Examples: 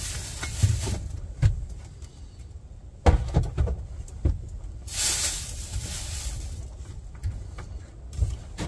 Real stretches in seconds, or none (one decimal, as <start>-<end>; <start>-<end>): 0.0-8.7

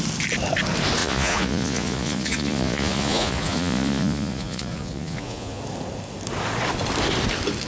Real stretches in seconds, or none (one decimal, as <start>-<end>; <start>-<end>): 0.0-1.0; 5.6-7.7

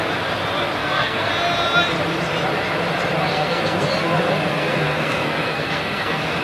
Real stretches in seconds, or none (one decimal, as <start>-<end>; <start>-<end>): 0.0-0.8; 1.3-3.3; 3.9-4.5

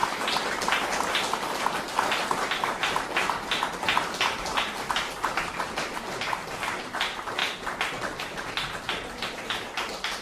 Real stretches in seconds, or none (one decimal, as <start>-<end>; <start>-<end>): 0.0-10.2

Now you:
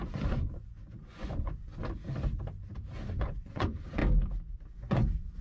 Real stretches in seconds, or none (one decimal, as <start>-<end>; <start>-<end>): 1.8-3.1; 4.0-4.7

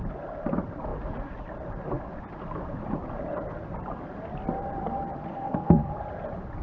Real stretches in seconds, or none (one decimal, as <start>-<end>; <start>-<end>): 0.0-5.3; 5.9-6.6

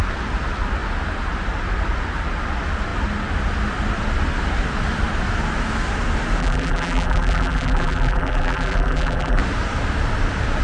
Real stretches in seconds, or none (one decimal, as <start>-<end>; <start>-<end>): 0.0-6.4; 9.4-10.6